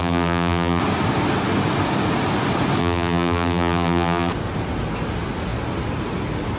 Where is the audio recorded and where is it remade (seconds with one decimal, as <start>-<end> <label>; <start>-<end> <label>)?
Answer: 0.0-0.8 remade; 0.8-2.8 recorded; 2.8-4.3 remade; 4.3-6.6 recorded